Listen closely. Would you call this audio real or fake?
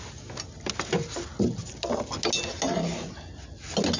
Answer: real